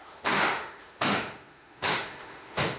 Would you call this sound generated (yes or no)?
yes